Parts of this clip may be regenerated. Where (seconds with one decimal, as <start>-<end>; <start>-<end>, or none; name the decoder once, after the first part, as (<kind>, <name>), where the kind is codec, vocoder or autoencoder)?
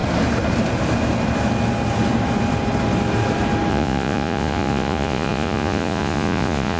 3.7-6.8 (vocoder, Vocos)